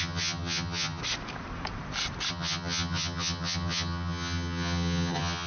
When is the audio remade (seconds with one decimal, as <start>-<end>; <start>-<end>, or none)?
0.0-1.0; 2.3-5.5